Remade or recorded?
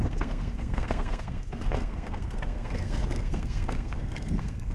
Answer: remade